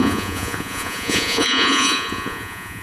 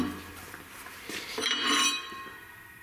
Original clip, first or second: second